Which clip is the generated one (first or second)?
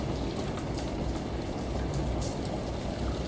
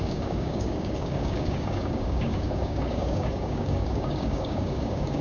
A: second